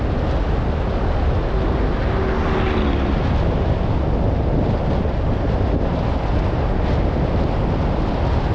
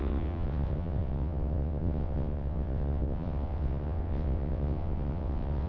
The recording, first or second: first